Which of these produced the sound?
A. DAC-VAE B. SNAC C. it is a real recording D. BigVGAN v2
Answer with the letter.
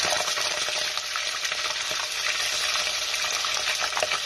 C